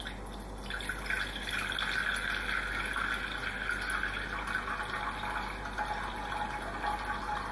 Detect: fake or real real